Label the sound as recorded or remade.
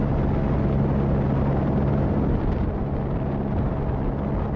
recorded